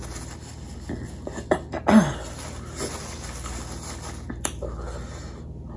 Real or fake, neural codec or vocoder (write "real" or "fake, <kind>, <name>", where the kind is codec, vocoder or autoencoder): real